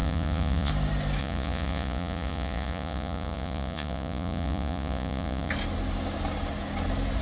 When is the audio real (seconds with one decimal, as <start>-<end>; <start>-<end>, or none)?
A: 0.7-1.2; 5.5-7.2